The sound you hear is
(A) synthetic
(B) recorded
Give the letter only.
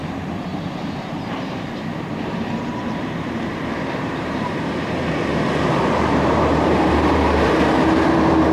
A